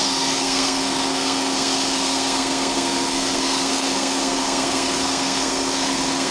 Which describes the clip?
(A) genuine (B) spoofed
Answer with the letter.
B